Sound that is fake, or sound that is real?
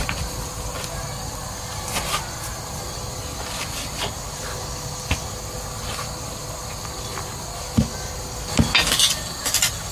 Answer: real